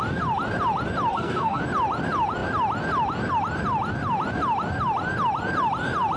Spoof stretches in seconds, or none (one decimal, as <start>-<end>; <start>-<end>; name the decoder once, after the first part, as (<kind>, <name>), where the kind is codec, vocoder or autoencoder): 1.1-1.6 (codec, SNAC)